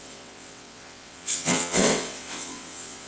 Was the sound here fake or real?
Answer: fake